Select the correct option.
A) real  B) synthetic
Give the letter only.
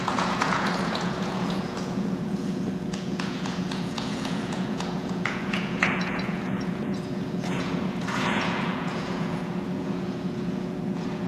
B